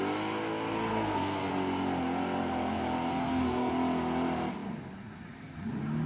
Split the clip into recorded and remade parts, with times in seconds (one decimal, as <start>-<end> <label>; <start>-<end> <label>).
0.0-0.9 recorded; 0.9-1.5 remade; 1.5-3.1 recorded; 3.1-3.7 remade; 3.7-6.1 recorded